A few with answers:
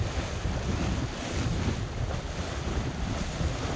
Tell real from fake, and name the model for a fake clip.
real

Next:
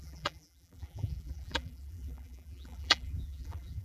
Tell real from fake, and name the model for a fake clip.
fake, vocoder, BigVGAN v2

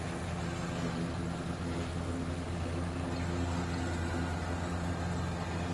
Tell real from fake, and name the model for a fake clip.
real